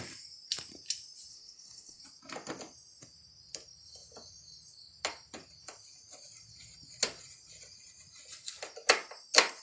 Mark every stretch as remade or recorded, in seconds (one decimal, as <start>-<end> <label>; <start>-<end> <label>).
0.0-1.3 recorded; 1.3-2.0 remade; 2.0-9.6 recorded